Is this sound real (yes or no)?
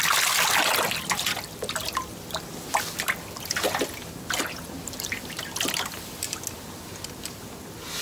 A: yes